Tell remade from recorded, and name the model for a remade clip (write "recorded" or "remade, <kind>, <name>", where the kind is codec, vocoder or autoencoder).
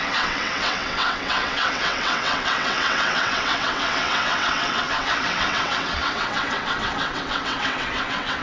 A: remade, vocoder, WaveNeXt